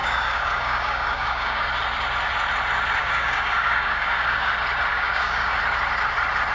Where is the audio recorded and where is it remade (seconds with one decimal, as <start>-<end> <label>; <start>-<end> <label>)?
0.0-1.7 remade; 1.7-3.0 recorded; 3.0-4.5 remade; 4.5-4.9 recorded; 4.9-5.6 remade; 5.6-6.5 recorded